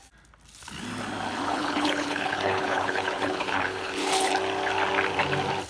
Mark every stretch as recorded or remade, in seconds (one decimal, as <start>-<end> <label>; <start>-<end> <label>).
0.0-1.5 recorded; 1.5-4.3 remade; 4.3-5.7 recorded